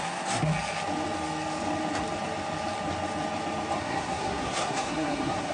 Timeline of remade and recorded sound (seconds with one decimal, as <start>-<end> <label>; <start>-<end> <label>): 0.0-0.5 remade; 0.5-3.8 recorded; 3.8-5.5 remade

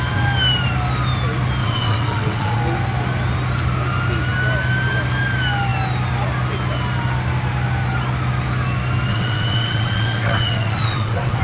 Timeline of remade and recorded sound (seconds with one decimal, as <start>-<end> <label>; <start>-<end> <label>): 0.0-1.6 recorded; 1.6-2.6 remade; 2.6-9.1 recorded; 9.1-11.4 remade

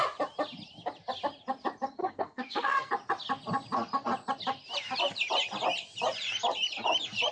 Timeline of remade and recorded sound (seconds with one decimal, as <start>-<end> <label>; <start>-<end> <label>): 0.0-2.0 recorded; 2.0-2.9 remade; 2.9-7.3 recorded

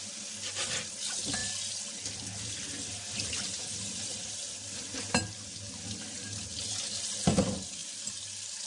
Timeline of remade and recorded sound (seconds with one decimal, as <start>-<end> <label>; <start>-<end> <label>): 0.0-7.8 recorded; 7.8-8.7 remade

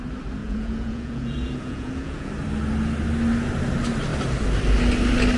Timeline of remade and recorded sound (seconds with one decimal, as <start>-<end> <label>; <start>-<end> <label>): 0.0-0.4 recorded; 0.4-2.3 remade; 2.3-5.4 recorded

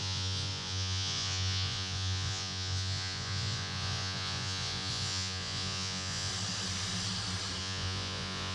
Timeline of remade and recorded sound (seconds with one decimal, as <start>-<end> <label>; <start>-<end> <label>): 0.0-6.3 remade; 6.3-7.6 recorded; 7.6-8.5 remade

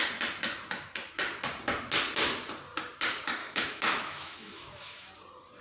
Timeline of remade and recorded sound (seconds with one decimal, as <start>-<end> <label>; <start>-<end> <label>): 0.0-3.4 recorded; 3.4-5.1 remade; 5.1-5.6 recorded

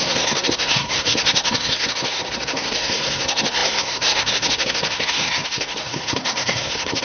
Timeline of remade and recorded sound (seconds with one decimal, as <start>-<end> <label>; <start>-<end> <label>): 0.0-7.0 remade